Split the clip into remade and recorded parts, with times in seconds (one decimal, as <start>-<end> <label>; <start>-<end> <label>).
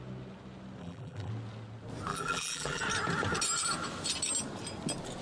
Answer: 0.0-0.8 recorded; 0.8-1.3 remade; 1.3-2.1 recorded; 2.1-2.8 remade; 2.8-5.2 recorded